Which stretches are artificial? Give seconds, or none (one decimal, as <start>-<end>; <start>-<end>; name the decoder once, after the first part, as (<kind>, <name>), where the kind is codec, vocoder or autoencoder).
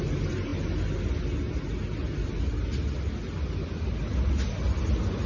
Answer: none